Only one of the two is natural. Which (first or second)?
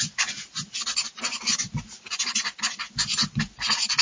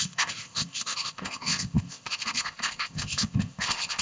first